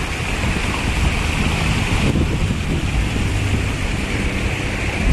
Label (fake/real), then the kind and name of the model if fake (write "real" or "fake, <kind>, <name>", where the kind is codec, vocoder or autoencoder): real